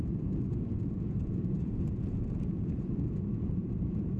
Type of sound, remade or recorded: remade